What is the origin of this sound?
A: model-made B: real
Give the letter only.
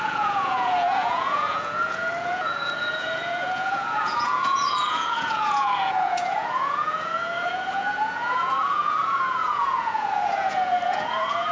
A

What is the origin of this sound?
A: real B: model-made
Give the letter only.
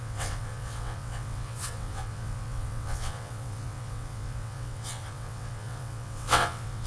B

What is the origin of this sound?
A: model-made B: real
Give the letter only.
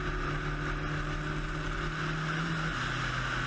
B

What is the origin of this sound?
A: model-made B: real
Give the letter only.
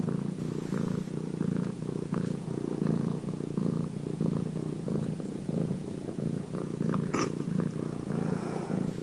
A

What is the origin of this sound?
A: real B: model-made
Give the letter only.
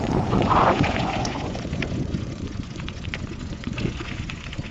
B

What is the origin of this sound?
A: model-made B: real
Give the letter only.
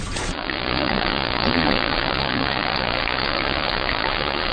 A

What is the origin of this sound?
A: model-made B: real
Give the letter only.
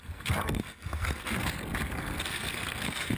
A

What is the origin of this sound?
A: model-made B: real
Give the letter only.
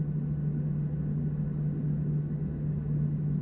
B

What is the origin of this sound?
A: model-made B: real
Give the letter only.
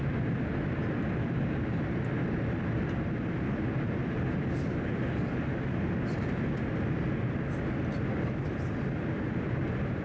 B